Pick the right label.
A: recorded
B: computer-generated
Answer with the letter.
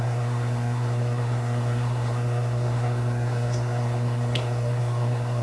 B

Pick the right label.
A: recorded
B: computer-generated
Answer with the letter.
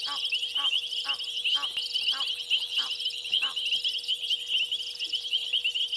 A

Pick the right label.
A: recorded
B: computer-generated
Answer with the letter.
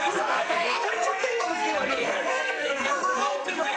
B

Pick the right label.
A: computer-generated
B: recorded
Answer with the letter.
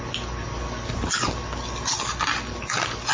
B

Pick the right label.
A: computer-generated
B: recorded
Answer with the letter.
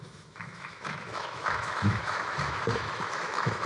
A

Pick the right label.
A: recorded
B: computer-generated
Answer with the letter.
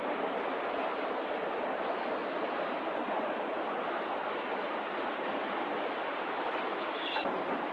A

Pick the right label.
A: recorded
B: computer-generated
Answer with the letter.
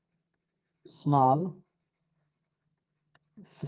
B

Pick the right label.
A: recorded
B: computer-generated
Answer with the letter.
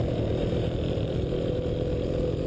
A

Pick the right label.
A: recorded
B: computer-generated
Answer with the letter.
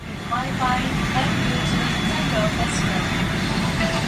A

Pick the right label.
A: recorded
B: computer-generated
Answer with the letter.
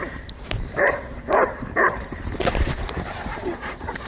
B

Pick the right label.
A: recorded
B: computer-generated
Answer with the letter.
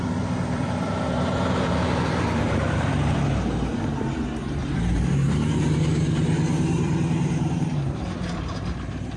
B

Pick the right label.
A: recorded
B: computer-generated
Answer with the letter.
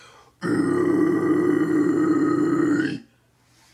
A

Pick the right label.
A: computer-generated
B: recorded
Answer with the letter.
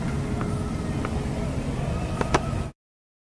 B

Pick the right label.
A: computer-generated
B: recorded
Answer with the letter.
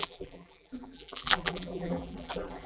A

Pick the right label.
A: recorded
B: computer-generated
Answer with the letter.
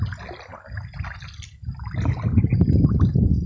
A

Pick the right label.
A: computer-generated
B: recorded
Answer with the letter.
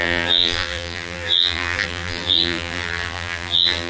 A